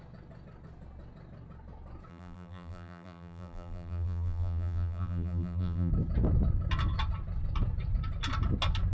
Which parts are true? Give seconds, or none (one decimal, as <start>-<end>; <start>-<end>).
0.0-2.1; 5.9-8.9